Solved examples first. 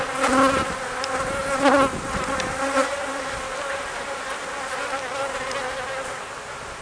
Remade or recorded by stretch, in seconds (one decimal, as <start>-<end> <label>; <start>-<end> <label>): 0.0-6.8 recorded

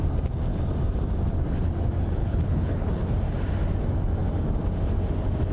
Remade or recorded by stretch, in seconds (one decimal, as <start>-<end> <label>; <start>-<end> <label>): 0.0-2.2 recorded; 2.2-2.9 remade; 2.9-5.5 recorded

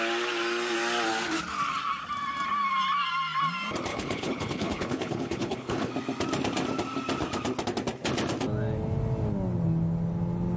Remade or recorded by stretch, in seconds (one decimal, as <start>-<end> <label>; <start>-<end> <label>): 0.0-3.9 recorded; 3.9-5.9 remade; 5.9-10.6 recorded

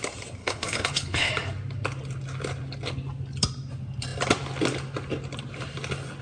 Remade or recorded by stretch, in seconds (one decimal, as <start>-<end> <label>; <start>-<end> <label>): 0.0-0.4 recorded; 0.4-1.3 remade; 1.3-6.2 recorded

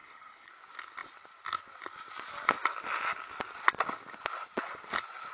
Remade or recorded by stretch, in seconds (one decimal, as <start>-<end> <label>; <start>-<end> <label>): 0.0-0.5 remade; 0.5-5.3 recorded

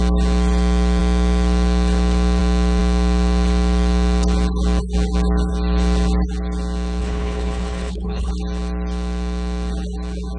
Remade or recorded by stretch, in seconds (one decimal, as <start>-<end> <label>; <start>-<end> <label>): 0.0-7.0 recorded; 7.0-8.3 remade; 8.3-10.4 recorded

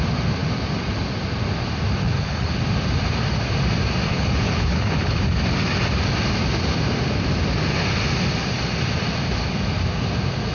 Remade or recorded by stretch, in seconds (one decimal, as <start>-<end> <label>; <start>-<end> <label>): 0.0-2.0 recorded; 2.0-2.5 remade; 2.5-4.1 recorded; 4.1-5.2 remade; 5.2-10.5 recorded